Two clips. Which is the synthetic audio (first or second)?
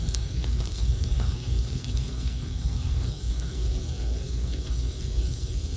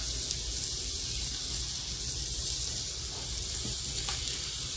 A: first